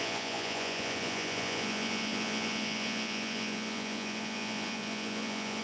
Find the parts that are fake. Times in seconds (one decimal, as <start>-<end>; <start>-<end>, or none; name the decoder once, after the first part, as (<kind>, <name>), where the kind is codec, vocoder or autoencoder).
0.0-5.6 (vocoder, Vocos)